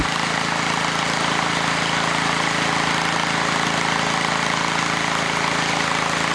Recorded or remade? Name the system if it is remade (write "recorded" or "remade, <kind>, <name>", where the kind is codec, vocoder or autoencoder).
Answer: recorded